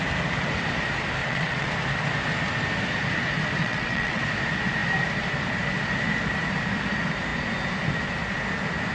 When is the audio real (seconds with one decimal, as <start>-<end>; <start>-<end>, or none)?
0.0-1.2; 1.7-3.6; 4.2-8.9